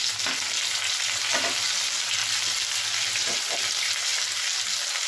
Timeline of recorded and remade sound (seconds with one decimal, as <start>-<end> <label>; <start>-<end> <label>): 0.0-5.1 recorded